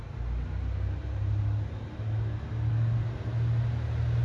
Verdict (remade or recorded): recorded